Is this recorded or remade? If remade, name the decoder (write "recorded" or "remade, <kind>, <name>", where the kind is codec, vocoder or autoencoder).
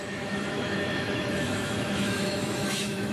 remade, autoencoder, DAC-VAE